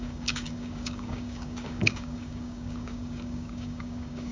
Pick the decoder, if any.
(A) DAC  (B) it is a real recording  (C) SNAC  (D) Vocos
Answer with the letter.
A